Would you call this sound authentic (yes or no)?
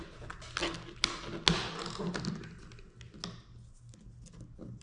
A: yes